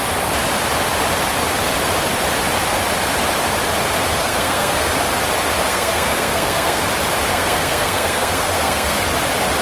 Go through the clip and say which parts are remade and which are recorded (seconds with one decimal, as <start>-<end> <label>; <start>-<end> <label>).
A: 0.0-4.2 recorded; 4.2-4.9 remade; 4.9-5.7 recorded; 5.7-6.8 remade; 6.8-7.3 recorded; 7.3-9.0 remade; 9.0-9.6 recorded